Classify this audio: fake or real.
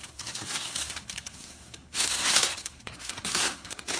fake